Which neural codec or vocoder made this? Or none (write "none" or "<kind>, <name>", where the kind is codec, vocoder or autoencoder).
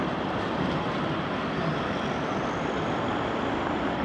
vocoder, BigVGAN v2